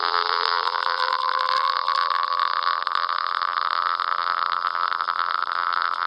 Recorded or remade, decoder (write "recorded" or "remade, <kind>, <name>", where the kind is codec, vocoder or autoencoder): remade, vocoder, BigVGAN v2